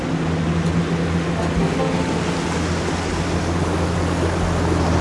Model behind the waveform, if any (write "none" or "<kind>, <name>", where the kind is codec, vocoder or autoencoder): none